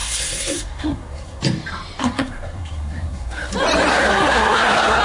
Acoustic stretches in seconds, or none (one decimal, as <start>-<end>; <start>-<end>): 1.4-2.0; 3.5-3.9